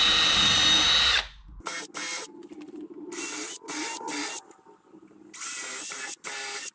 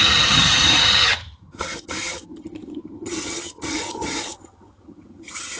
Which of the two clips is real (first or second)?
first